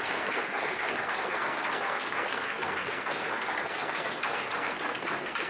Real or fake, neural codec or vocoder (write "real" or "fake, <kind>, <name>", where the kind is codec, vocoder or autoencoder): fake, codec, SNAC